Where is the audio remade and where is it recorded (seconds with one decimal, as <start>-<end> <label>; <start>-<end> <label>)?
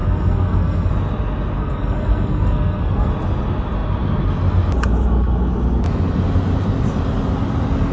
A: 0.0-0.9 remade; 0.9-1.6 recorded; 1.6-3.1 remade; 3.1-7.9 recorded